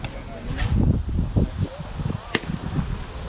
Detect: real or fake real